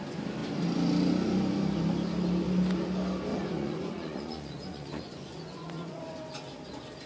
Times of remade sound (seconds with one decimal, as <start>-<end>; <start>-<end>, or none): 3.3-6.0